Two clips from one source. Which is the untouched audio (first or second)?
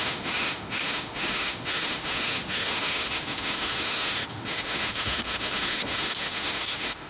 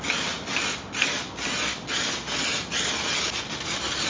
second